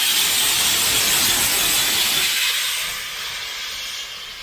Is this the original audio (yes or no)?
yes